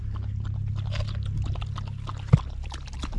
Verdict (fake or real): real